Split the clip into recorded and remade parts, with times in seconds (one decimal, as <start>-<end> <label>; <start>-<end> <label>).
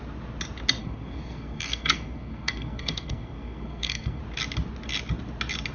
0.0-0.8 recorded; 0.8-4.2 remade; 4.2-5.7 recorded